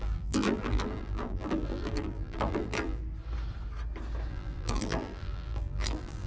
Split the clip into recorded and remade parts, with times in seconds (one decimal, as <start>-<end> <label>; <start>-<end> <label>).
0.0-3.0 remade; 3.0-4.3 recorded; 4.3-6.3 remade